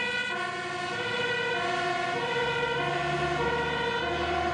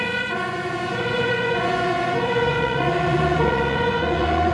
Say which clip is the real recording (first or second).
first